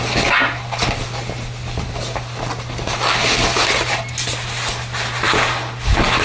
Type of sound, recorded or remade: recorded